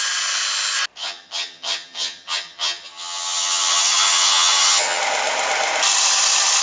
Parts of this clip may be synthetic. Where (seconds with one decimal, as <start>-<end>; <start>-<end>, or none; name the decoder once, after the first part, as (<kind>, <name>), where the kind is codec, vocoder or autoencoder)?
1.0-5.0 (vocoder, HiFi-GAN)